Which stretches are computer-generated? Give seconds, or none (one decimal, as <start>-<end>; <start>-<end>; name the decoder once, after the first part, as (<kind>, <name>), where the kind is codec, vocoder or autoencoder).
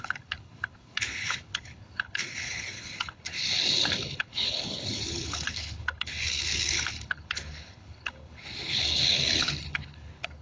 0.0-10.4 (codec, HILCodec)